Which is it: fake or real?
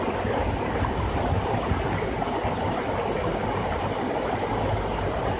real